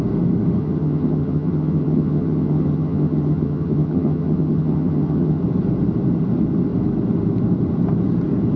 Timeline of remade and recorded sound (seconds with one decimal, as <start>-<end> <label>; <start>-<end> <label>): 0.0-0.6 recorded; 0.6-5.4 remade; 5.4-8.6 recorded